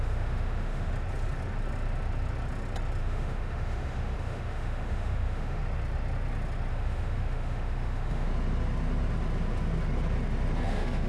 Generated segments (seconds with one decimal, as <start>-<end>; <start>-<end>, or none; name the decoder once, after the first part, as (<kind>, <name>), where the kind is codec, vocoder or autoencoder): 0.0-0.9 (autoencoder, DAC-VAE); 3.0-5.6; 6.7-8.3; 10.7-11.1